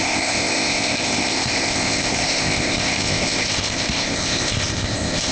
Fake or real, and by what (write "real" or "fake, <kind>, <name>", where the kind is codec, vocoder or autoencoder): fake, codec, ZipCodec